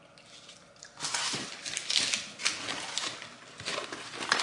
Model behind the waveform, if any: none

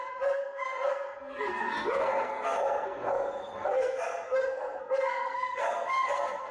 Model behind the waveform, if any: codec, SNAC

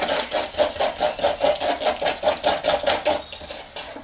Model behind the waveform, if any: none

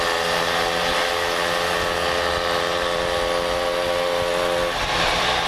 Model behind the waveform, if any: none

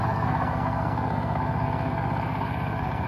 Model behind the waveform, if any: codec, SNAC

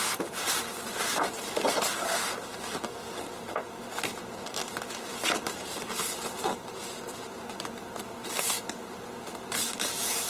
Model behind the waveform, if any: none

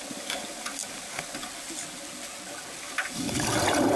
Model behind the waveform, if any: none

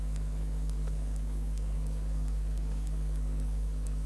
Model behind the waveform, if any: codec, SNAC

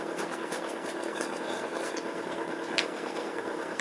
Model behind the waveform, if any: codec, SNAC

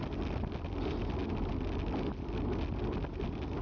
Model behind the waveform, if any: none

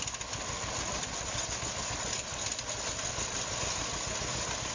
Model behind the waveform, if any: none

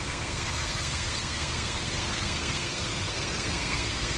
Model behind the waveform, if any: codec, SNAC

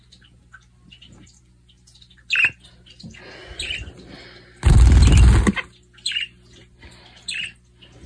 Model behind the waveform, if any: none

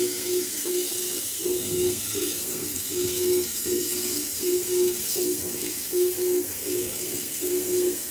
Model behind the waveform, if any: codec, SNAC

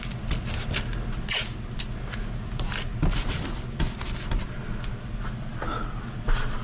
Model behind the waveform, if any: none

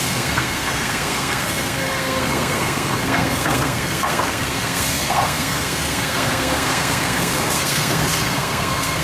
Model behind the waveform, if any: codec, SNAC